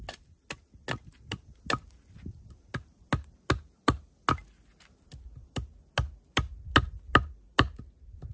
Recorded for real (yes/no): yes